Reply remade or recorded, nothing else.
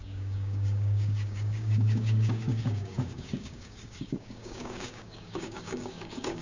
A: remade